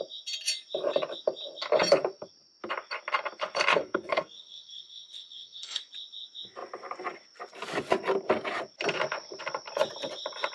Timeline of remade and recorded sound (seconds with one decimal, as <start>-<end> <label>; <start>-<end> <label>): 0.0-3.7 recorded; 3.7-5.8 remade; 5.8-10.5 recorded